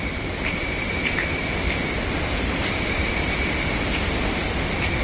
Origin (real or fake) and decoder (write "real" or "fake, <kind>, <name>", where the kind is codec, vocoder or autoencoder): fake, vocoder, BigVGAN v2